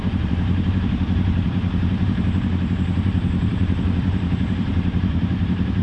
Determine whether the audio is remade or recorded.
remade